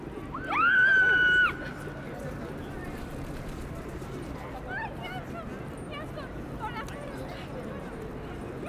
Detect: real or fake real